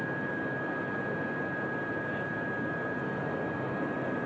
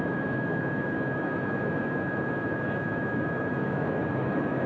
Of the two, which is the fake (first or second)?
second